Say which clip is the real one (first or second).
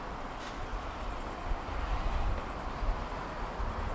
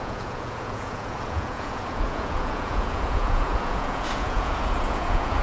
first